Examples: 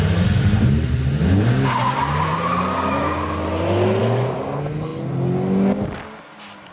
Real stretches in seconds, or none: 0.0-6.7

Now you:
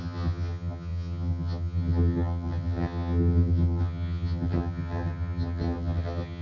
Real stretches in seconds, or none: none

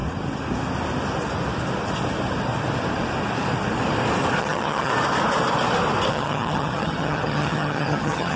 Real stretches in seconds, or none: 0.0-4.4; 4.9-6.1

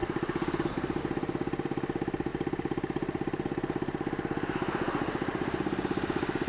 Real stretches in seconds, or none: 0.0-6.5